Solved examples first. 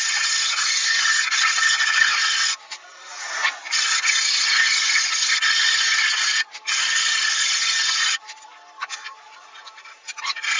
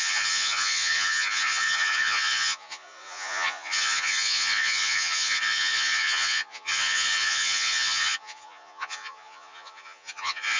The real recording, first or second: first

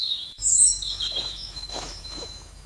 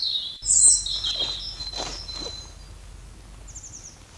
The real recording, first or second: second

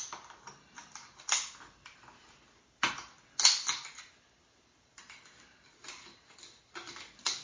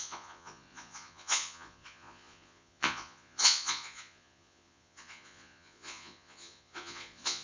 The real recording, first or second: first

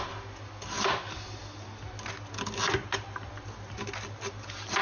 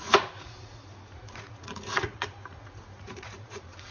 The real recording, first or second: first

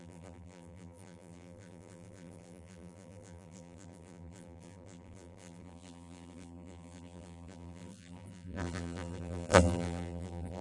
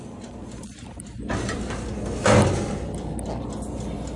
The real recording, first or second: second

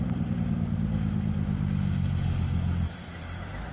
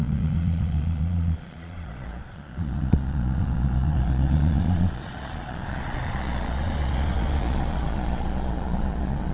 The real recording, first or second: first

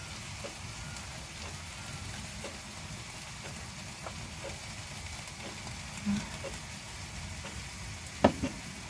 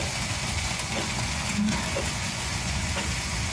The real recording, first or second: first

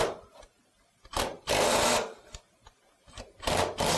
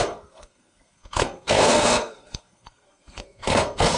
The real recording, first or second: first